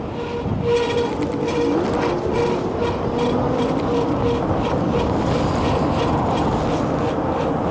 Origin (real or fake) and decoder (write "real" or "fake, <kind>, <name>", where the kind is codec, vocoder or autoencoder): real